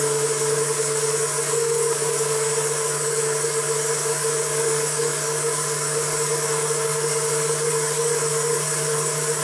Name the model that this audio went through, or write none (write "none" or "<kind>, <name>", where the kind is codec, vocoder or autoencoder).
codec, DAC